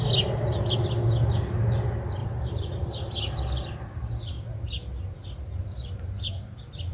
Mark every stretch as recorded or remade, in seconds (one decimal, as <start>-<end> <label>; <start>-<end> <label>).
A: 0.0-2.2 recorded; 2.2-3.2 remade; 3.2-6.9 recorded